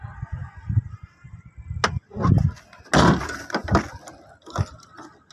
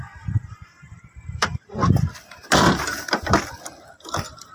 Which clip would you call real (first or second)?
first